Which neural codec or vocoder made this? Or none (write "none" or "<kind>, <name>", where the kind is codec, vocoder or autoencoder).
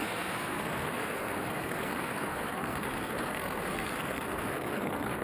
codec, SNAC